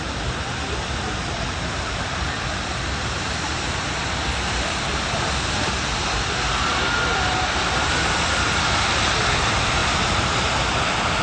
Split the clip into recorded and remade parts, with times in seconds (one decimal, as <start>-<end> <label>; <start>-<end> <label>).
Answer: 0.0-11.2 recorded